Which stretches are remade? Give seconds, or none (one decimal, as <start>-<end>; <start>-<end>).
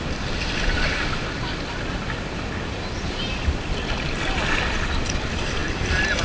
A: none